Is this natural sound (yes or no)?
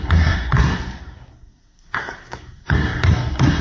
no